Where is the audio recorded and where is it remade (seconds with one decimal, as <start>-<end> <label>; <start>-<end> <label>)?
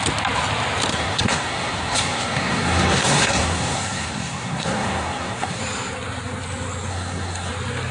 0.0-0.9 recorded; 0.9-5.6 remade; 5.6-6.9 recorded; 6.9-7.5 remade; 7.5-7.9 recorded